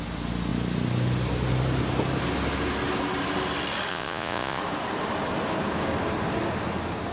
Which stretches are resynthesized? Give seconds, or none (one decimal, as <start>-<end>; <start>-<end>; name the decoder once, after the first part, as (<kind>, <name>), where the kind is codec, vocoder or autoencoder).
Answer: 3.9-4.6 (vocoder, Vocos)